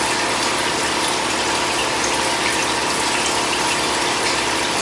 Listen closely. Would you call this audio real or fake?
real